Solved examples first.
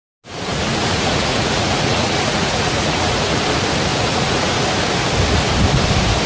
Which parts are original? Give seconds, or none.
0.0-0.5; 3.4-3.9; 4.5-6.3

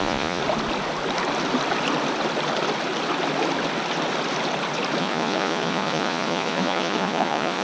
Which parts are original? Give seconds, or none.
0.4-5.0

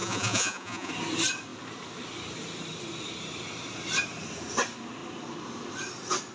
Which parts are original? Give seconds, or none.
0.9-6.3

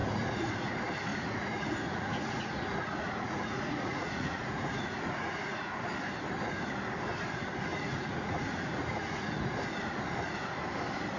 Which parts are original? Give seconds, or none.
0.7-1.1; 5.7-7.7; 9.5-11.2

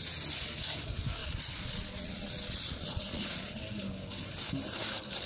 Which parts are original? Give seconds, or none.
0.0-1.2; 3.6-5.3